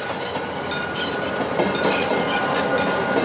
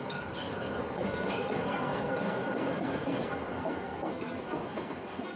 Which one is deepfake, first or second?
second